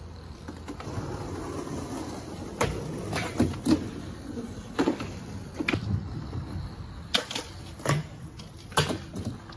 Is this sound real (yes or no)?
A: yes